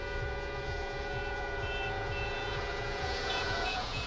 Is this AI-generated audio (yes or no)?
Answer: yes